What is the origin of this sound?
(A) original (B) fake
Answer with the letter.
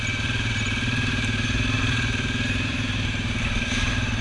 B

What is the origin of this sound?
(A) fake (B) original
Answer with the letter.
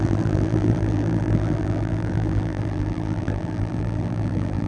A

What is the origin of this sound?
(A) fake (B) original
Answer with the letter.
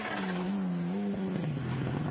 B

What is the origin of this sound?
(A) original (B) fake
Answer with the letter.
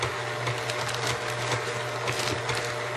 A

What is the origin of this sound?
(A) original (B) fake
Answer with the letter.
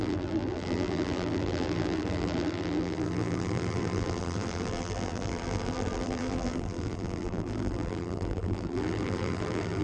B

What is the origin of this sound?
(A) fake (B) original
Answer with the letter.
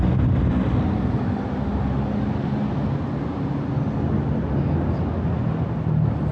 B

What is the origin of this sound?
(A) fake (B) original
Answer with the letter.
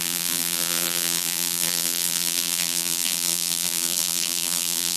A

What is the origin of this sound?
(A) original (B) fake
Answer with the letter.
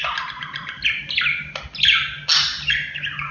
A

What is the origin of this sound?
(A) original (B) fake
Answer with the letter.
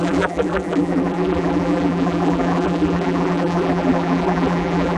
B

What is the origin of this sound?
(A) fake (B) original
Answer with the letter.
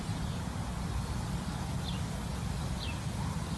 B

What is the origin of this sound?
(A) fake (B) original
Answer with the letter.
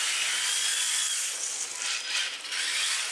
B